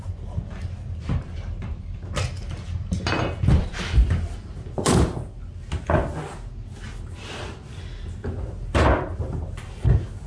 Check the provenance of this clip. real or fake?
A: real